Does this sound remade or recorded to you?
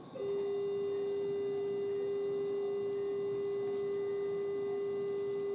recorded